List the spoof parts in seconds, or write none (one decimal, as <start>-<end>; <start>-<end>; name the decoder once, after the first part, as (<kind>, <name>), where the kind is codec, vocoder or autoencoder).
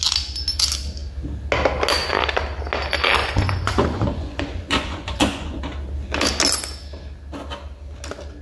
3.2-5.6 (vocoder, Vocos)